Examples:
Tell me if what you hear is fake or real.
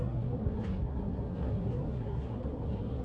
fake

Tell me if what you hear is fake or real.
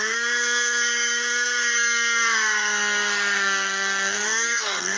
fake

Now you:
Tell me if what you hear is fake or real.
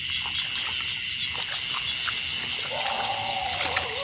real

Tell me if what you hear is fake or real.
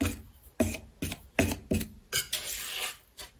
real